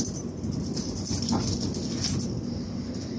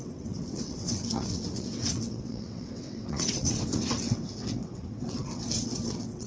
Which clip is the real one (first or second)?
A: first